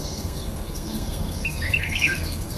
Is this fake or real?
fake